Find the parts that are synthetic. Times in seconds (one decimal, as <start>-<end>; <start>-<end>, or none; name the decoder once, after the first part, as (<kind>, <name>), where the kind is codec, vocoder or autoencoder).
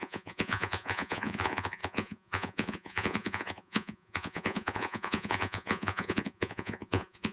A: 0.0-7.3 (vocoder, Vocos)